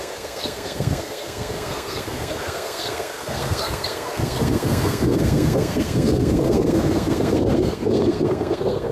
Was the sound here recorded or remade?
remade